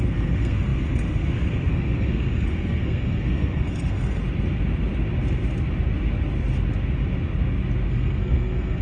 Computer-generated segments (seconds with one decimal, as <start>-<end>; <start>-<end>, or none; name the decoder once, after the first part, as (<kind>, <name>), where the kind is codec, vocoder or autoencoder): 0.0-4.2 (codec, SNAC); 7.9-8.8